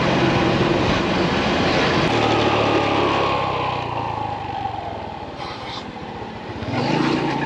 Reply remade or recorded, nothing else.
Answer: recorded